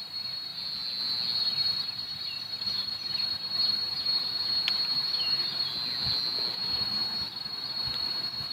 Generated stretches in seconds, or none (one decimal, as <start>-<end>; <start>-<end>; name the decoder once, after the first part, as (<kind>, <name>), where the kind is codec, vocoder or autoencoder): none